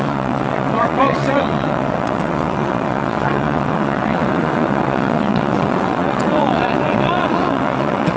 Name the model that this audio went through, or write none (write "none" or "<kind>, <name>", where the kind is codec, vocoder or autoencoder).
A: vocoder, WaveNeXt